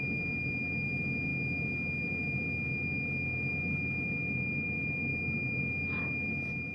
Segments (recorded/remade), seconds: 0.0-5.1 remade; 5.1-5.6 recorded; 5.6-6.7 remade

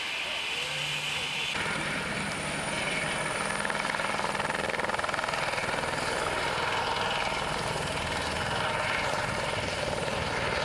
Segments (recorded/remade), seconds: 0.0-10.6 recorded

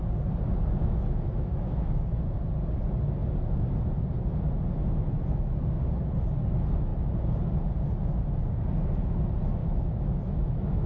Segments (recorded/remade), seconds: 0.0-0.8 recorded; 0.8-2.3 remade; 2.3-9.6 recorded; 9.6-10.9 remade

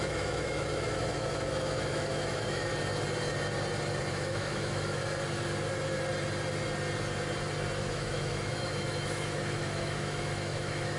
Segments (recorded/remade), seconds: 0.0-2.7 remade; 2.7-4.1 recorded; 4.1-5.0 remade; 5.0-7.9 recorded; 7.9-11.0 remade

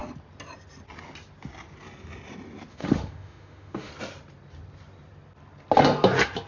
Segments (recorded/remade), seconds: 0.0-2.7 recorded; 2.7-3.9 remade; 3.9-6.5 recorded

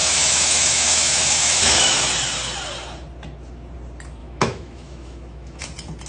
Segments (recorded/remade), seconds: 0.0-2.0 remade; 2.0-4.2 recorded; 4.2-5.6 remade; 5.6-6.1 recorded

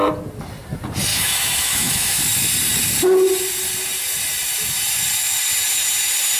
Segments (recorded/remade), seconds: 0.0-1.1 recorded; 1.1-2.2 remade; 2.2-6.4 recorded

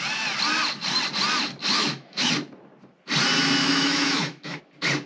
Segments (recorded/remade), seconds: 0.0-1.7 recorded; 1.7-2.3 remade; 2.3-3.6 recorded; 3.6-4.6 remade; 4.6-5.1 recorded